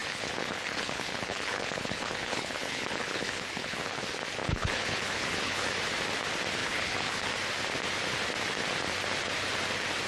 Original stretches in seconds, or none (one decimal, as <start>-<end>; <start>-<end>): 4.0-4.4; 5.7-6.6; 7.3-10.1